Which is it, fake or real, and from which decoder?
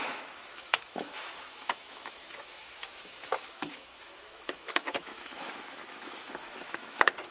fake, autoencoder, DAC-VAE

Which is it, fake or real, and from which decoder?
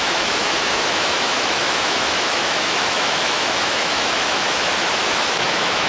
fake, autoencoder, DAC-VAE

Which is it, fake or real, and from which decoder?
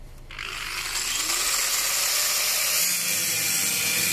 real